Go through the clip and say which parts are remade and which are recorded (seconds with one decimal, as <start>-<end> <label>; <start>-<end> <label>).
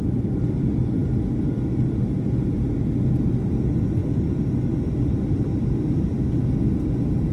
0.0-7.3 recorded